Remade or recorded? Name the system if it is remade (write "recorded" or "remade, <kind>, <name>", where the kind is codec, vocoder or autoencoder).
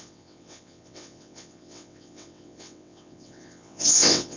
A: remade, vocoder, WaveNeXt